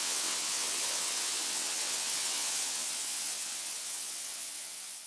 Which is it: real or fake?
fake